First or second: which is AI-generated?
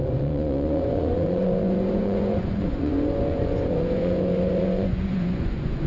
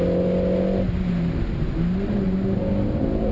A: first